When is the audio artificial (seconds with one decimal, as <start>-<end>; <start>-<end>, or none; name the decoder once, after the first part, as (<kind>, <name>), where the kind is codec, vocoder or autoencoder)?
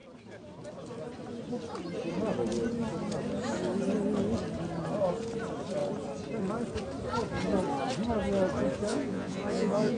8.9-10.0 (vocoder, Vocos)